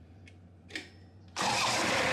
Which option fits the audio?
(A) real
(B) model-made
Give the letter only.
B